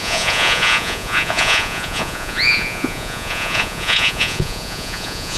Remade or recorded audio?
remade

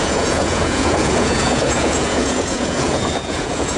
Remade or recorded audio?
remade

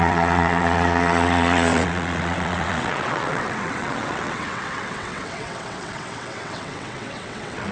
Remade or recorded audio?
remade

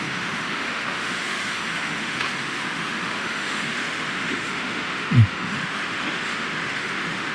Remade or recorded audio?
remade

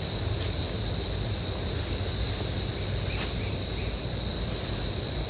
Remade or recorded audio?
recorded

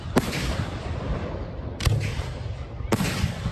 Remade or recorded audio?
recorded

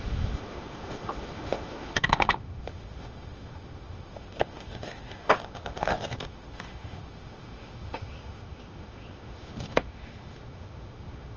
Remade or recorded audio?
remade